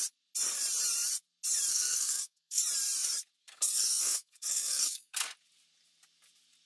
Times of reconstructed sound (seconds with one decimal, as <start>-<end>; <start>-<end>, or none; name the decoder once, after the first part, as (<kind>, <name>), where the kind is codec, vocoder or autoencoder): 1.7-2.6 (codec, SNAC); 3.4-5.2

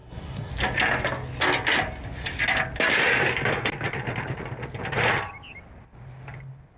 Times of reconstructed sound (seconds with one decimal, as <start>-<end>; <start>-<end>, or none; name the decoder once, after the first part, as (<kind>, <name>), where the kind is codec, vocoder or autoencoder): 0.0-0.5 (codec, SNAC)

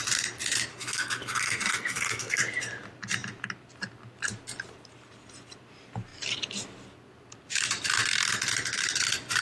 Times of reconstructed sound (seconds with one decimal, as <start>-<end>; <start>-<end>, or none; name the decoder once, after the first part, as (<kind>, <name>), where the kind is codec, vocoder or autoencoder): 0.7-2.4 (codec, SNAC)

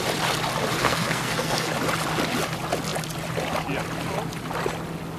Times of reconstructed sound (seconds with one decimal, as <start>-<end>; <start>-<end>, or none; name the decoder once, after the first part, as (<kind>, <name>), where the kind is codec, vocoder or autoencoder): 0.8-1.7 (codec, SNAC)

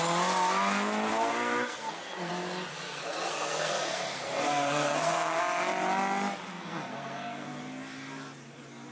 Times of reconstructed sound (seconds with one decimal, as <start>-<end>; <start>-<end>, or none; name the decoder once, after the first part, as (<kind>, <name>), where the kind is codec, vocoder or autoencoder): 1.1-2.3 (codec, SNAC); 2.7-5.4; 6.5-7.6